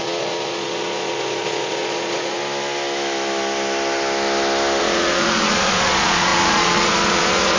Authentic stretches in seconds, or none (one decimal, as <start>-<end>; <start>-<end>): 2.4-4.8